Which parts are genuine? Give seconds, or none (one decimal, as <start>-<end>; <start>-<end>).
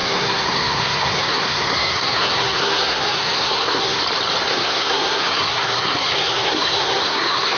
4.0-4.5